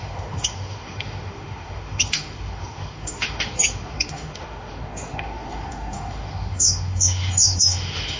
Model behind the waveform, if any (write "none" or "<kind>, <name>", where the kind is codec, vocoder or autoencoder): autoencoder, DAC-VAE